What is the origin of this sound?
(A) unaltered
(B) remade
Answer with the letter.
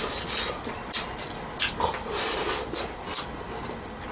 A